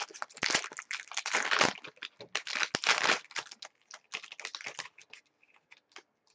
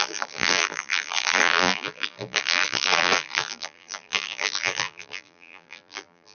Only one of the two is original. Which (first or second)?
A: first